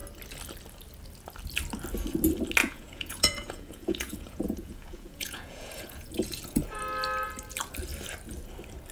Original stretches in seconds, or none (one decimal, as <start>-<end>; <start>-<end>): 0.0-2.6; 6.8-8.9